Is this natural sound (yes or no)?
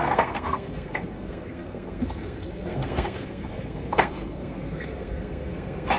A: no